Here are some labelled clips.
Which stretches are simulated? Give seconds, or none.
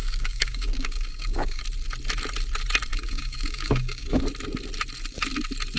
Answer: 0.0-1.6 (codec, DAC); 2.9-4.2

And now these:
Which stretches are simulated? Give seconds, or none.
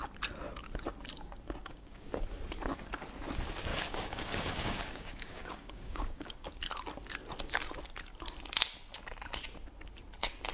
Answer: 1.6-2.2 (codec, DAC); 3.7-6.6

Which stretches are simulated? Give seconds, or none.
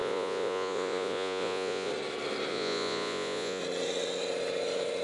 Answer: 0.0-1.9 (vocoder, Vocos); 2.5-3.6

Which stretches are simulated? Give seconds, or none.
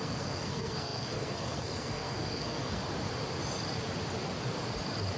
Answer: 0.0-2.8 (codec, SNAC)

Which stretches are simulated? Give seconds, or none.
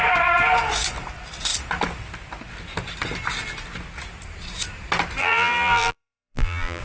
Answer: 5.2-6.8 (vocoder, BigVGAN v2)